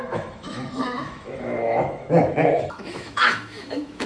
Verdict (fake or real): fake